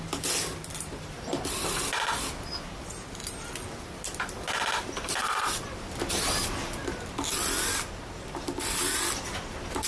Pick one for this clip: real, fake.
real